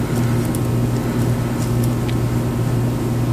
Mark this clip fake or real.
real